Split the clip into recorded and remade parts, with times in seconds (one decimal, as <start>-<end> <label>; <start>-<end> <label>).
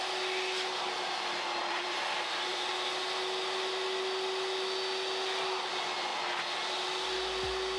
0.0-1.6 recorded; 1.6-2.7 remade; 2.7-7.8 recorded